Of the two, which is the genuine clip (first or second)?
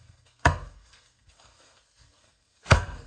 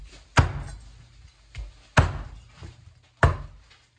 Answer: second